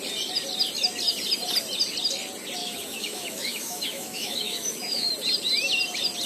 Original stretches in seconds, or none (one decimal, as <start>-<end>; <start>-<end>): 0.0-2.6; 5.1-6.3